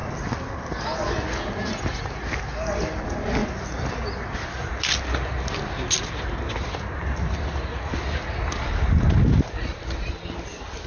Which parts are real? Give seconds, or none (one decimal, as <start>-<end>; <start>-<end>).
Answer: 0.0-10.9